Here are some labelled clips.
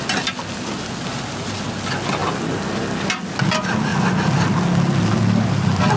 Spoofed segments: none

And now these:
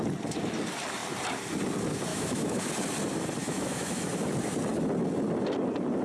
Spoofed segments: 2.1-2.7 (autoencoder, DAC-VAE); 3.4-4.1

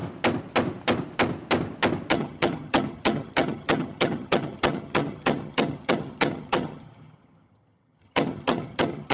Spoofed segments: 2.1-9.1 (vocoder, HiFi-GAN)